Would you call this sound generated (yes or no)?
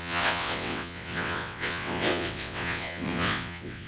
yes